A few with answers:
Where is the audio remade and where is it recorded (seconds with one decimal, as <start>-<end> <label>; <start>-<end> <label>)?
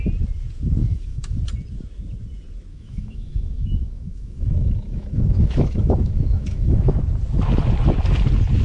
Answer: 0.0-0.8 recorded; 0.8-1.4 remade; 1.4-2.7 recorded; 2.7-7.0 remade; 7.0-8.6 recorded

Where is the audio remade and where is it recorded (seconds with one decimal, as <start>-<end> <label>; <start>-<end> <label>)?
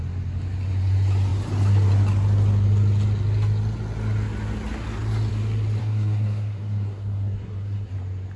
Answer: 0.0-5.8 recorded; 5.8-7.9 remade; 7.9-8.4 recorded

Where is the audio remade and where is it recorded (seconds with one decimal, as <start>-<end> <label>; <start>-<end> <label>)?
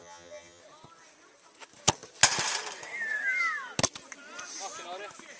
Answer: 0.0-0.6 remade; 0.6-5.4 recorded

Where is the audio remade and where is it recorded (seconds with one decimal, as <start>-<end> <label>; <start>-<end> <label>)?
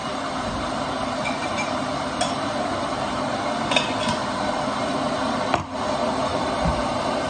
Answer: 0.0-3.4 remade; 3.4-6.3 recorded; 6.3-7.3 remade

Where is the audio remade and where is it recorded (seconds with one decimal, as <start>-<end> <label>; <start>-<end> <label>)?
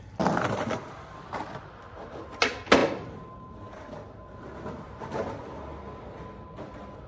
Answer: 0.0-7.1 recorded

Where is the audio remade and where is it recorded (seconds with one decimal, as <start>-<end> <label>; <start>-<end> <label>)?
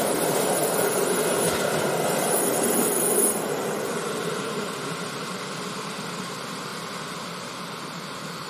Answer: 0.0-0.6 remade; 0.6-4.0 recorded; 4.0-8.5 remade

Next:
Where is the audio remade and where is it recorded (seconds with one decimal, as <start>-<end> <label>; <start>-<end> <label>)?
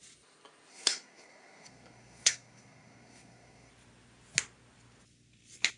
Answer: 0.0-0.7 recorded; 0.7-3.7 remade; 3.7-5.8 recorded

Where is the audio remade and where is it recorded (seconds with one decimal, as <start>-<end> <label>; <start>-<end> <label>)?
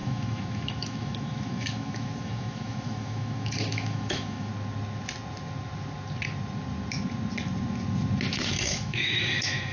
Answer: 0.0-4.5 remade; 4.5-8.3 recorded; 8.3-9.7 remade